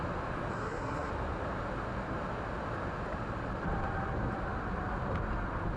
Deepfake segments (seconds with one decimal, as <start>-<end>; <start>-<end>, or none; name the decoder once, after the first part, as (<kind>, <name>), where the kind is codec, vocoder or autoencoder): 0.5-1.1 (codec, SNAC)